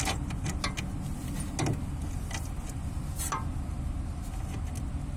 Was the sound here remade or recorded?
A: recorded